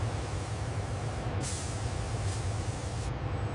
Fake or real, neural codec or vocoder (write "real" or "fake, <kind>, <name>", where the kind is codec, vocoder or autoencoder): real